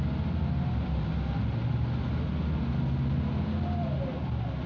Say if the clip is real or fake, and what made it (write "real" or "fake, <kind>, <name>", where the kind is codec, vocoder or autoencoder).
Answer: real